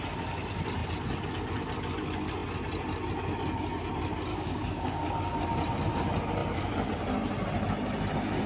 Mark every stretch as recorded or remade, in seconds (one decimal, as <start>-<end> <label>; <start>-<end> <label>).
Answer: 0.0-4.3 recorded; 4.3-5.4 remade; 5.4-8.5 recorded